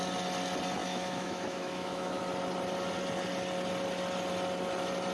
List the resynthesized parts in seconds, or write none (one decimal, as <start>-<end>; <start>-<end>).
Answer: 0.8-2.2